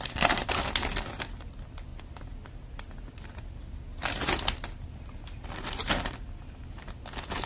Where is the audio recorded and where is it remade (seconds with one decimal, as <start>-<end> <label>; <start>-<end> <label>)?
0.0-7.5 recorded